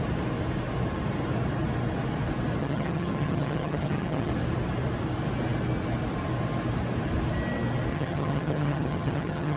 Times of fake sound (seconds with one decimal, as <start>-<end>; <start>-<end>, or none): 2.6-4.3; 7.9-9.6

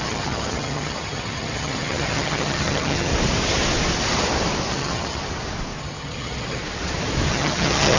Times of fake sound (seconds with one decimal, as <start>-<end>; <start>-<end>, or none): 0.0-3.1; 4.7-5.2; 5.8-6.6; 7.3-8.0

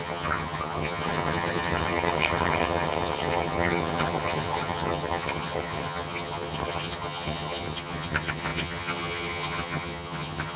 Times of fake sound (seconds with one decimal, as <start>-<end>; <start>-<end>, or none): 0.0-10.6

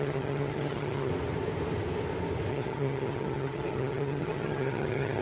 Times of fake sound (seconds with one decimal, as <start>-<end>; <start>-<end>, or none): 0.0-1.1; 2.5-5.2

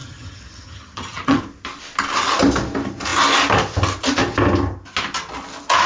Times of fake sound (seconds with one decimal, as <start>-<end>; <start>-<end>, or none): 0.0-1.4

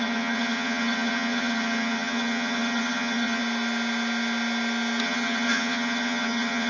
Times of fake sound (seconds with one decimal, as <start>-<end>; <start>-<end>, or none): 0.0-3.4; 5.0-6.7

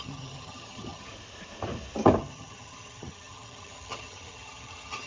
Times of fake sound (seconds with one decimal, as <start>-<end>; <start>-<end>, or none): 0.0-1.1; 2.2-5.1